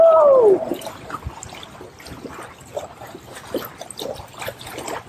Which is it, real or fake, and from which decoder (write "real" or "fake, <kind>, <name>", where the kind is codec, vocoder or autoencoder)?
real